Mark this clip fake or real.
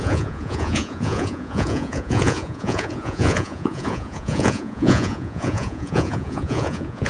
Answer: fake